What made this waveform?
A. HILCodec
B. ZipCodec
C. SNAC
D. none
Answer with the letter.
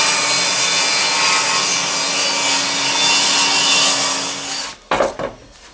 D